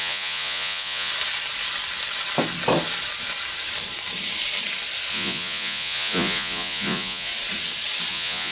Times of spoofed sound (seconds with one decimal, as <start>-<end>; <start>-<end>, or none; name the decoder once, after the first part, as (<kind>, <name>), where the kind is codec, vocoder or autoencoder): 0.0-1.1 (vocoder, Vocos); 5.1-7.3; 8.1-8.5